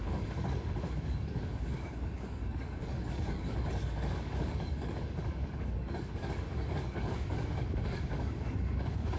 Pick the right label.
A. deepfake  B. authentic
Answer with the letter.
A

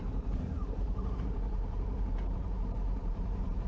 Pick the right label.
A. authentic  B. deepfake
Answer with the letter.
B